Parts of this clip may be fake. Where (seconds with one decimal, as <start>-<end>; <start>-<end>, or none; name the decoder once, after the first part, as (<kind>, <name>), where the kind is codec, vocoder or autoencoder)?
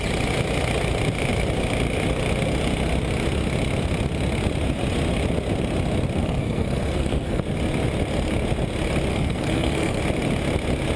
6.2-7.4 (codec, SNAC); 9.1-10.0